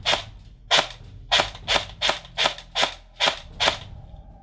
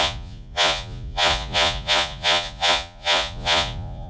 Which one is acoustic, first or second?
first